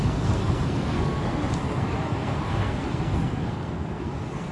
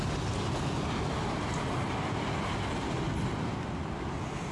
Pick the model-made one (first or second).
first